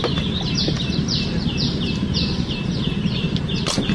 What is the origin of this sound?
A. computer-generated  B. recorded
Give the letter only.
B